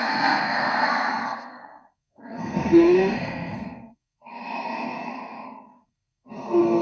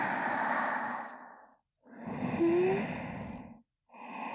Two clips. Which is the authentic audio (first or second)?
second